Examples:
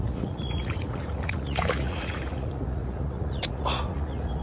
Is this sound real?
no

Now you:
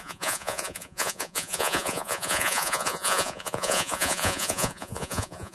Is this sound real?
no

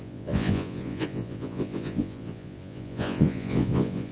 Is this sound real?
no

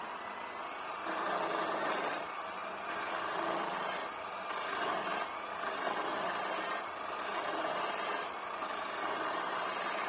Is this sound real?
yes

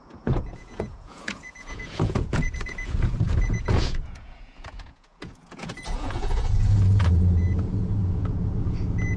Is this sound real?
no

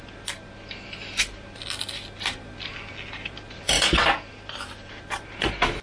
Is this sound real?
yes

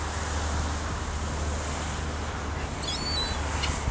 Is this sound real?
yes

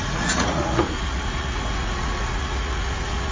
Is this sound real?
no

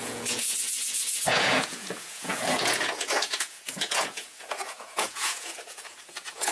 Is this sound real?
no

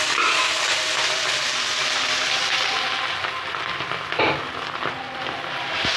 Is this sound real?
yes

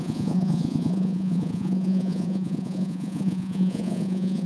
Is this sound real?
no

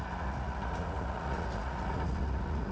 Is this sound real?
no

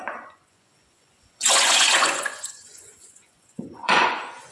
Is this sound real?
no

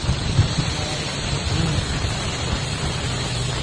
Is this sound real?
yes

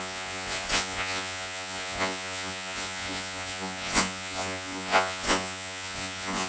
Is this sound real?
no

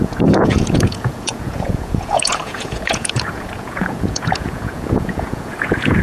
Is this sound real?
no